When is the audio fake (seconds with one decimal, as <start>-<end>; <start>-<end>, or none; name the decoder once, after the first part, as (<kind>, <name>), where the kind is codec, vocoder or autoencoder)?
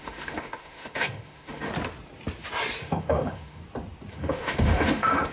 0.0-1.7 (autoencoder, DAC-VAE); 2.8-3.6; 4.1-5.3